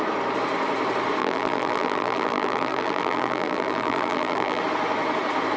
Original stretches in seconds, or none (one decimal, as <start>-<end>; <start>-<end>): 0.0-1.2; 4.6-5.6